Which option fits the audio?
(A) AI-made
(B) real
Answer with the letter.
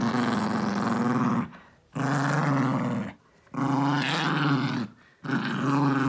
B